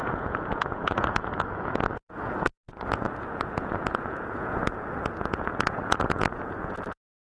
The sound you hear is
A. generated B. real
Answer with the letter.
A